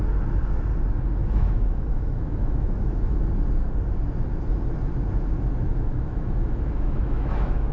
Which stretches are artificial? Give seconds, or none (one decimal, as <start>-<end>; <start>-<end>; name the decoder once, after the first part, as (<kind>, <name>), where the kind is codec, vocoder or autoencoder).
1.2-3.2 (autoencoder, DAC-VAE); 5.7-7.7

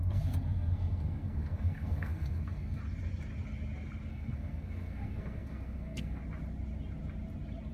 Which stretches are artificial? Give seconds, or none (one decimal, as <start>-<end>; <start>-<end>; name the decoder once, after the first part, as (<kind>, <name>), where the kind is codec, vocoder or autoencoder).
0.0-2.8 (codec, SNAC); 4.1-6.2

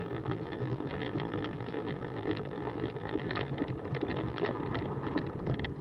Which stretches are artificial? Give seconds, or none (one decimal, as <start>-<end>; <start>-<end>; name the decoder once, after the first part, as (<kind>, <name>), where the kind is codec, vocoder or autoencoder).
0.0-3.5 (vocoder, BigVGAN v2); 4.1-4.6

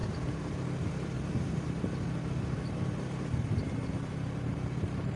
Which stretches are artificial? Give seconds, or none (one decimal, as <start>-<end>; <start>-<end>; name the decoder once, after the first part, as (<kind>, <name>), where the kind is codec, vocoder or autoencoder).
none